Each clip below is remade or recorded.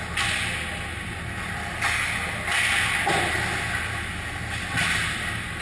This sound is recorded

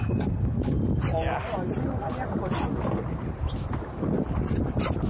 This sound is recorded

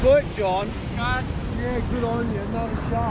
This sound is recorded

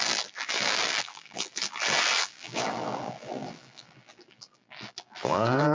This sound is remade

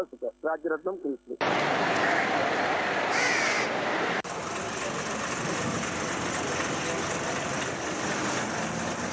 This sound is recorded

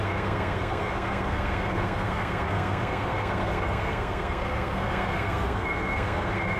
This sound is remade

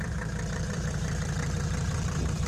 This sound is remade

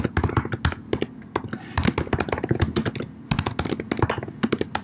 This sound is recorded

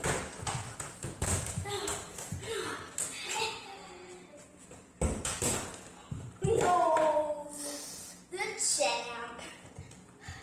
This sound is recorded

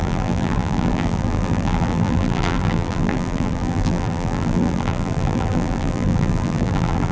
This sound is remade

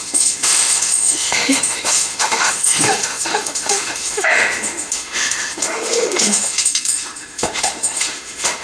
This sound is remade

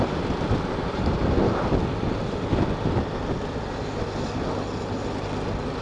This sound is recorded